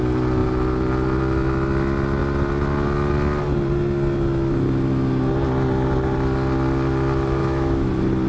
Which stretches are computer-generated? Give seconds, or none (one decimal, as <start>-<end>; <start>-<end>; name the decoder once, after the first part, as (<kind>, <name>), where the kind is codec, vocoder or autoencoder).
7.4-7.9 (autoencoder, DAC-VAE)